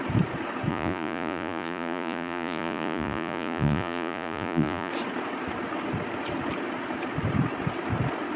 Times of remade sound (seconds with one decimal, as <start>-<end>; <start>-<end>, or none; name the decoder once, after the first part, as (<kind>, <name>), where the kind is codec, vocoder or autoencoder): 0.7-4.9 (vocoder, Vocos)